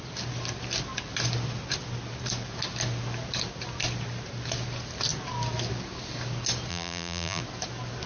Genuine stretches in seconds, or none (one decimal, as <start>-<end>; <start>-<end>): 0.0-6.7; 7.4-8.1